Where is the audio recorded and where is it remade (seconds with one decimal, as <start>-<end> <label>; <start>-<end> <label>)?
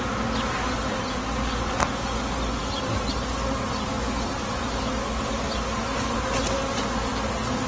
0.0-7.7 recorded